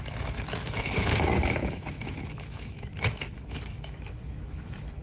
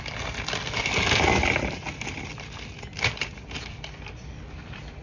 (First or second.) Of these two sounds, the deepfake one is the first